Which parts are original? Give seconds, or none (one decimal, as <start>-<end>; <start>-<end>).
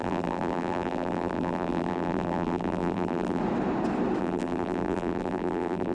3.4-4.2